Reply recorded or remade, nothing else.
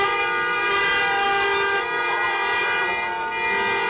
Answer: recorded